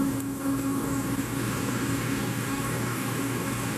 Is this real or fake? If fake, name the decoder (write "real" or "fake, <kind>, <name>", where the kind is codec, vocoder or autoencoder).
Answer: fake, codec, DAC